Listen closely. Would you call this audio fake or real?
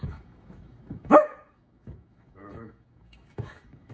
fake